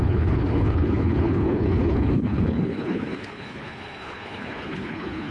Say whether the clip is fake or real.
fake